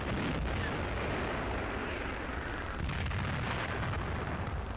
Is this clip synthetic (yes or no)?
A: no